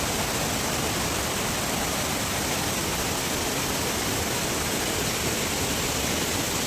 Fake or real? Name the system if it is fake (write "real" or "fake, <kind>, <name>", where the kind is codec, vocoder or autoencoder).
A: real